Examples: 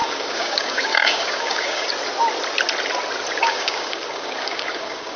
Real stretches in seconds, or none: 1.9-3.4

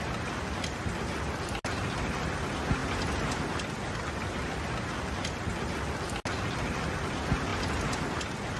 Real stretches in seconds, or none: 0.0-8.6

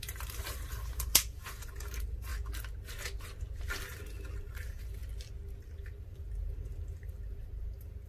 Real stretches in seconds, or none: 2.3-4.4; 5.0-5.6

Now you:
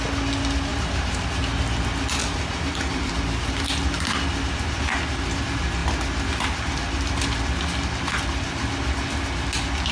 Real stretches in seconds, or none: 0.0-0.7; 1.2-2.2; 3.1-9.9

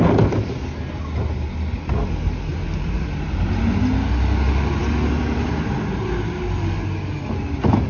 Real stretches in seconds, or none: 0.0-2.5; 3.5-7.9